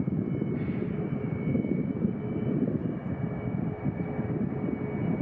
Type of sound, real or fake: real